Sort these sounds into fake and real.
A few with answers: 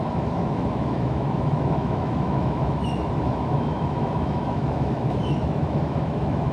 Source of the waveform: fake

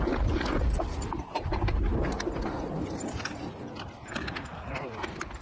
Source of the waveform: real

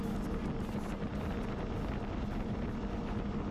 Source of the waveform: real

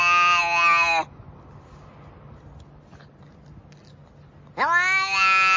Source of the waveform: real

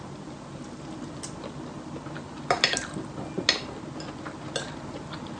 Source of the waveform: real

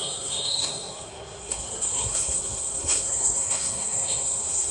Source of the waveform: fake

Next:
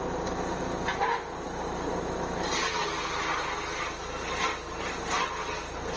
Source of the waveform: real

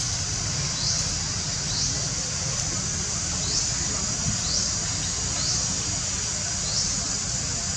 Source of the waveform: real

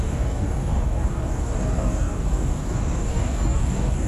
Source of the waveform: fake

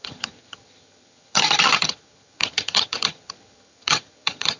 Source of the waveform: fake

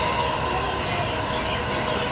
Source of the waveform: real